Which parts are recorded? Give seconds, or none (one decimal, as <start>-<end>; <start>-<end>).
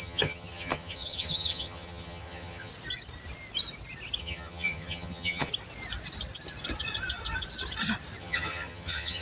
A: 2.7-4.2; 5.5-8.2